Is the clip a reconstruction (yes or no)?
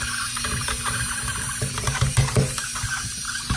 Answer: no